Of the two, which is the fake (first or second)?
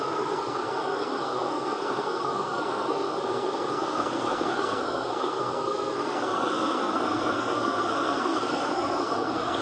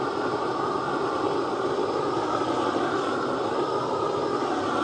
first